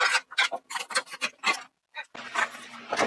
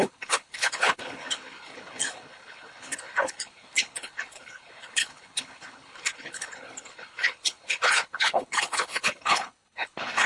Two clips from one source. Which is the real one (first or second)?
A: first